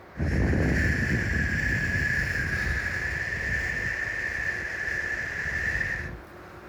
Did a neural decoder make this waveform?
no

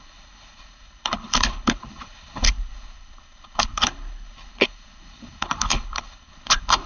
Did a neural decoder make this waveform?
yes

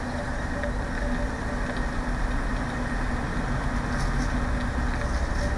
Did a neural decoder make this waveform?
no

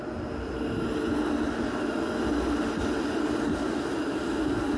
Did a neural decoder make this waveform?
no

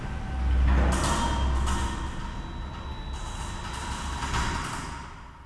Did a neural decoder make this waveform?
no